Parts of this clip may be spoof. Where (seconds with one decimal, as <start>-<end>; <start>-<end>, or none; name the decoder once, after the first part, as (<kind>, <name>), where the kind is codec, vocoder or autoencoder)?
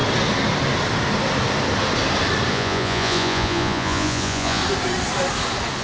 2.5-4.6 (vocoder, Vocos)